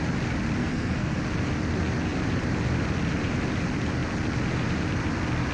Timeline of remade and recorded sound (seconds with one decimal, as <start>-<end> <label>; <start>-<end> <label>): 0.0-0.6 recorded; 0.6-1.2 remade; 1.2-5.5 recorded